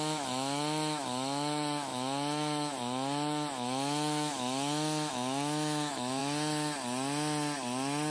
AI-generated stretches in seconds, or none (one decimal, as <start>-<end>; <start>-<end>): 0.0-6.2